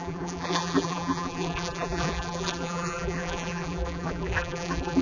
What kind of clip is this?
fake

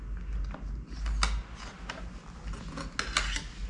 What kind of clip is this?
real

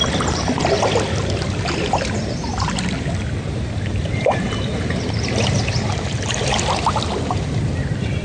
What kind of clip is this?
fake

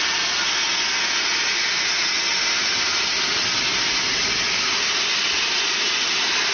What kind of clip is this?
real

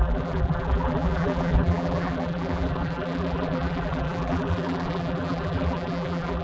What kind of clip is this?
fake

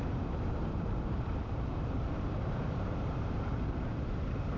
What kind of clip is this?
fake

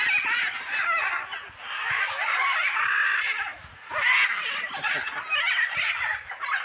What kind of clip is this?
real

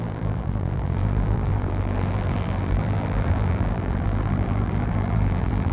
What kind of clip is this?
fake